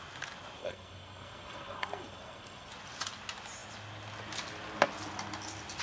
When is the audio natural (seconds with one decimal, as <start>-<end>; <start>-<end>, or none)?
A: 0.0-0.6; 2.7-5.8